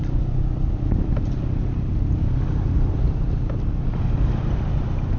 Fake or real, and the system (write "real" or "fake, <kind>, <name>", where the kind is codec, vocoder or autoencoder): real